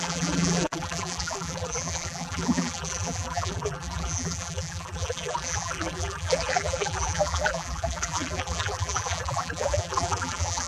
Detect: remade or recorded remade